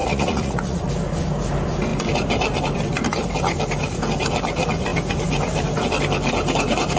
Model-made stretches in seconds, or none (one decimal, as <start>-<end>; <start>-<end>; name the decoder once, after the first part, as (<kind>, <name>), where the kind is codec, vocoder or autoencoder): 0.0-0.9 (vocoder, Vocos)